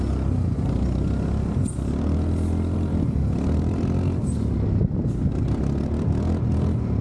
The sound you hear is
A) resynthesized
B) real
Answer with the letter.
B